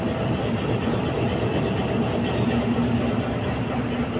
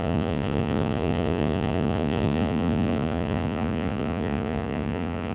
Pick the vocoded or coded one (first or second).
second